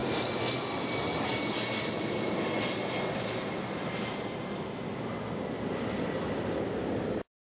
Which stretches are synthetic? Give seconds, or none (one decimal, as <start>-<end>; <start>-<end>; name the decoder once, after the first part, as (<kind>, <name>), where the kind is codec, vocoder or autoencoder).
none